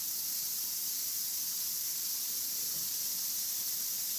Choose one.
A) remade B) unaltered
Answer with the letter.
B